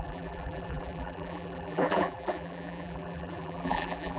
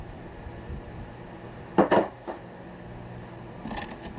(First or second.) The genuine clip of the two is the second